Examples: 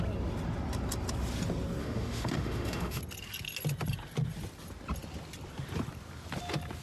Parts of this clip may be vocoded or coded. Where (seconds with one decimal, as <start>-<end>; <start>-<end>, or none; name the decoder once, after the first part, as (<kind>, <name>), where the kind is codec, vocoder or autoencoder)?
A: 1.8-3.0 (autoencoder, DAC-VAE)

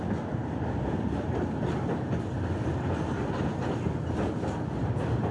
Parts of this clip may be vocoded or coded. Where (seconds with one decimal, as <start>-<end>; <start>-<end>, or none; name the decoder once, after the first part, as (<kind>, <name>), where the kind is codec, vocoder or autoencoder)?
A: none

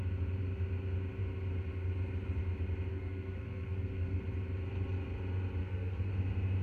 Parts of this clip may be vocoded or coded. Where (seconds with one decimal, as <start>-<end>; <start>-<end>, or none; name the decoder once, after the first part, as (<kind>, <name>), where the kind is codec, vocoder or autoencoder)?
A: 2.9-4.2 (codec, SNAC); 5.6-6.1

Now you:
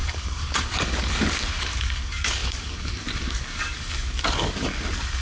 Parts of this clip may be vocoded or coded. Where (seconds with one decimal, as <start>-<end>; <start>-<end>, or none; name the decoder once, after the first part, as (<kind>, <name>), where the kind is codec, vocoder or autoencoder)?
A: 0.0-5.2 (codec, DAC)

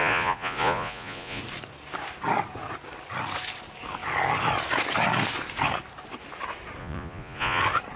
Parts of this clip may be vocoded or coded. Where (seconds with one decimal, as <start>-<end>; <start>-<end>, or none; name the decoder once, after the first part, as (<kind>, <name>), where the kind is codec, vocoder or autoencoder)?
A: 0.0-1.4 (vocoder, Vocos); 6.8-7.6